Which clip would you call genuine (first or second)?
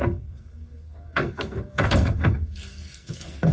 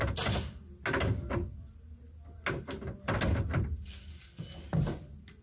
second